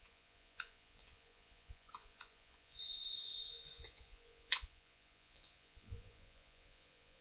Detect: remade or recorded remade